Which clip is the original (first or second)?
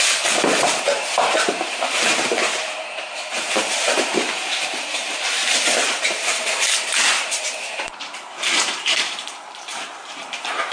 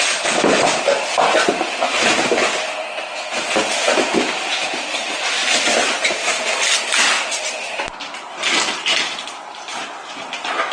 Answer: second